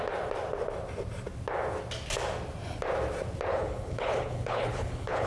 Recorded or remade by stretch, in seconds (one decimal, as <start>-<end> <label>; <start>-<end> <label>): 0.0-3.5 recorded; 3.5-5.3 remade